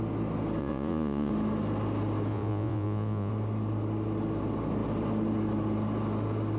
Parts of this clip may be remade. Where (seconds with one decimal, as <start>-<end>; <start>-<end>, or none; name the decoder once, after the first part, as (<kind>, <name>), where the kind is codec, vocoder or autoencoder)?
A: 0.6-1.3 (vocoder, Vocos); 2.3-3.3